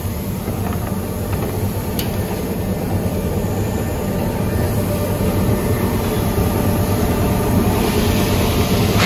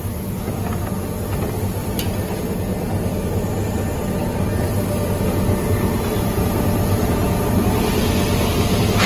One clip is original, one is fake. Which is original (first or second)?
second